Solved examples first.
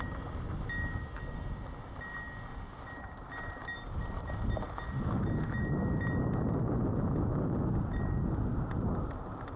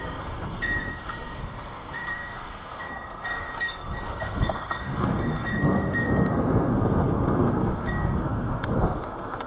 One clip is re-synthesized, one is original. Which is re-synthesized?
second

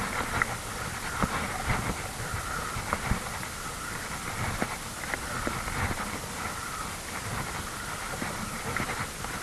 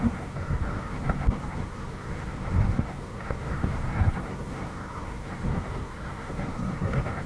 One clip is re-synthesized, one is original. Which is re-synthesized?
second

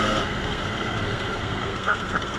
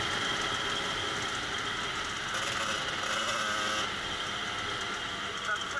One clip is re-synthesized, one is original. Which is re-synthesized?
first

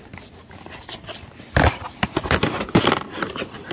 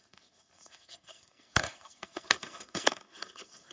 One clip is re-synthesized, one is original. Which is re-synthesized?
second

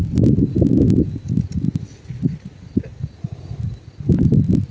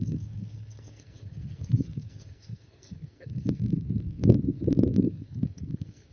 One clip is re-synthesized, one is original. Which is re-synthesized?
second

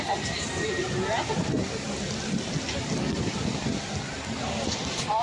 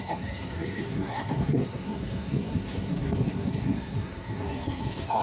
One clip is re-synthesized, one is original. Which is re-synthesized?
second